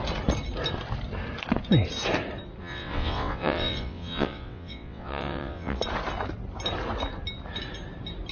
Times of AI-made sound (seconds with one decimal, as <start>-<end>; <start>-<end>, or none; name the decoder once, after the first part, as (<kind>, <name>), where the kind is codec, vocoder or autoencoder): 2.6-5.8 (vocoder, WaveNeXt)